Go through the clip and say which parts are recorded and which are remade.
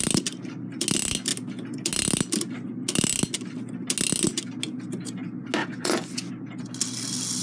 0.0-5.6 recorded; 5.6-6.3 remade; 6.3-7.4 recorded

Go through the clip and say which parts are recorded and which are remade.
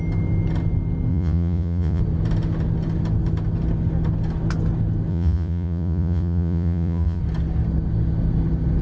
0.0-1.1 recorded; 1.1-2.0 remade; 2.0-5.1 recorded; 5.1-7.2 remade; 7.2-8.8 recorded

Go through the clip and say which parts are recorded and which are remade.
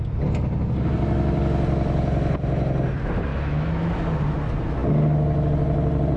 0.0-3.3 recorded; 3.3-3.9 remade; 3.9-6.2 recorded